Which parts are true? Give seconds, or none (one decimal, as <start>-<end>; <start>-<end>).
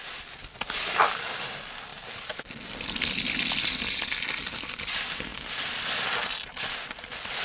0.0-7.4